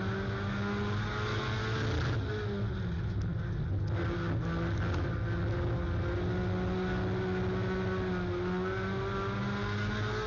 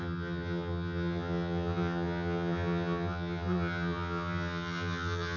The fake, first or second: second